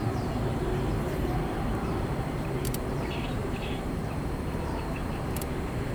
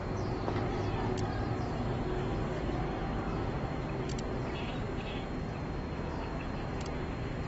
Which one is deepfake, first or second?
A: first